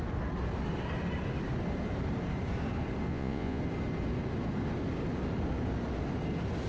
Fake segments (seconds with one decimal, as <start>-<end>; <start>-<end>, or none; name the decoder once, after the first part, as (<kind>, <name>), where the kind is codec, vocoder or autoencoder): 3.1-3.6 (vocoder, Vocos)